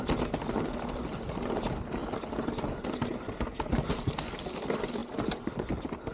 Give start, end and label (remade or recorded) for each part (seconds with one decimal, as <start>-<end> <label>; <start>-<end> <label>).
0.0-6.1 recorded